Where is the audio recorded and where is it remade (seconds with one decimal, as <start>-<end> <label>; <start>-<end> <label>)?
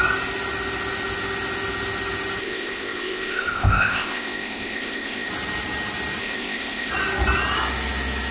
0.0-2.4 recorded; 2.4-5.3 remade; 5.3-6.2 recorded; 6.2-6.9 remade; 6.9-8.3 recorded